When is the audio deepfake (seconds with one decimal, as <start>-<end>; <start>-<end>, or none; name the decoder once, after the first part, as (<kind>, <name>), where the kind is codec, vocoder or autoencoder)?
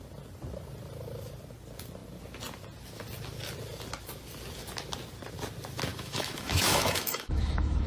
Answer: 5.9-7.9 (autoencoder, DAC-VAE)